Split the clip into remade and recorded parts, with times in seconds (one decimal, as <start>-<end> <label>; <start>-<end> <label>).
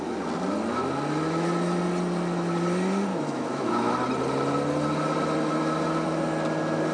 0.0-3.1 recorded; 3.1-3.9 remade; 3.9-6.9 recorded